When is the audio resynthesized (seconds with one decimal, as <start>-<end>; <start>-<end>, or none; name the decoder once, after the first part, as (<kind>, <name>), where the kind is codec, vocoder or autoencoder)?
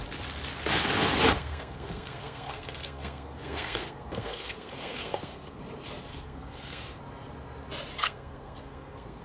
1.4-5.6 (codec, SNAC); 6.1-7.0; 8.0-9.2